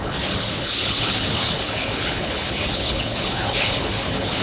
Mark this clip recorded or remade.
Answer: remade